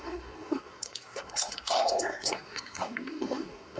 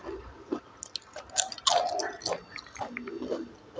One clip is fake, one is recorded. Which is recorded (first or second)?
second